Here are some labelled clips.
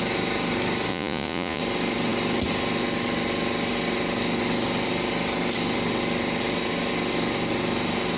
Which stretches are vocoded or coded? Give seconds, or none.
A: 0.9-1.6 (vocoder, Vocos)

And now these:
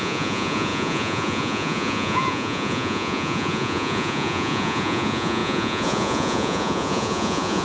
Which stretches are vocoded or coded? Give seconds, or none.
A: 0.0-7.6 (vocoder, Vocos)

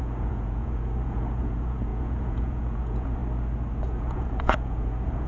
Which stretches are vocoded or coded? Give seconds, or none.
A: 0.0-3.2 (vocoder, Vocos); 3.8-5.3

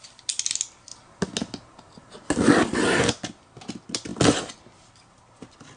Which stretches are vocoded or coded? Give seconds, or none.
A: none